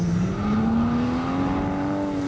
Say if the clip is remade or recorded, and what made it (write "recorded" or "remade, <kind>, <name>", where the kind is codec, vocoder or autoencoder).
recorded